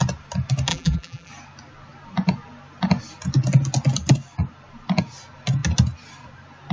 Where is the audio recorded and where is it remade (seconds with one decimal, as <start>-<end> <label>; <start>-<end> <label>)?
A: 0.0-0.7 recorded; 0.7-1.3 remade; 1.3-6.7 recorded